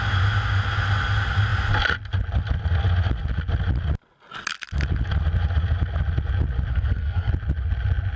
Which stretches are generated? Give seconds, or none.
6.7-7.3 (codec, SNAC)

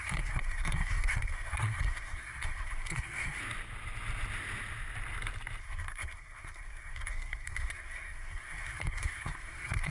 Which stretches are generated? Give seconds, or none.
0.0-3.4 (codec, SNAC); 5.6-9.9

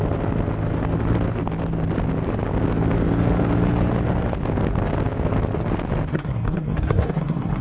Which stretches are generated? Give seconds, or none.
6.1-7.6 (codec, SNAC)

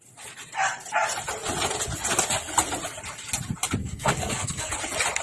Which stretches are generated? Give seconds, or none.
3.8-4.7 (codec, SNAC)

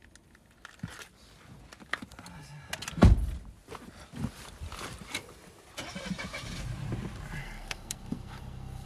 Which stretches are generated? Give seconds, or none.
7.4-8.9 (codec, SNAC)